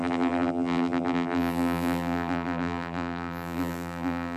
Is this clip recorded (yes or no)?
no